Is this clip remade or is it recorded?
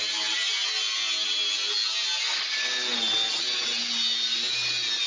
recorded